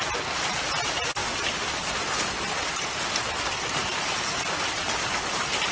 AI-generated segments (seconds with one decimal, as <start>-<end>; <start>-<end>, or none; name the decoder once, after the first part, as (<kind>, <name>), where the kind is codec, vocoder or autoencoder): none